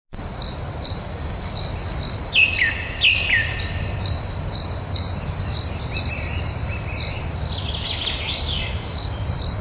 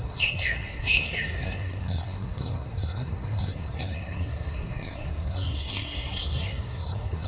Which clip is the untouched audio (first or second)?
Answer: first